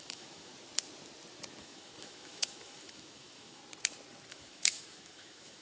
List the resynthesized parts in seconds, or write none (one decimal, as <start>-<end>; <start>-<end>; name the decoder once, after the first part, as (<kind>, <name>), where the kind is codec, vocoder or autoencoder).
0.0-0.5 (autoencoder, DAC-VAE); 1.6-3.6; 4.3-5.6